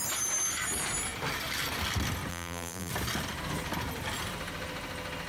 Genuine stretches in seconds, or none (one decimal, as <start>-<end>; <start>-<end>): 0.0-2.3; 2.9-5.3